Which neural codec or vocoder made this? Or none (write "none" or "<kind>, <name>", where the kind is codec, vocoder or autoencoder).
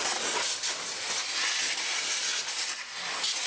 none